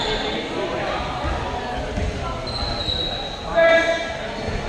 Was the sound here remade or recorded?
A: recorded